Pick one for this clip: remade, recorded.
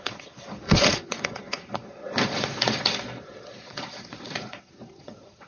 remade